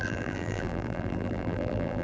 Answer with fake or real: fake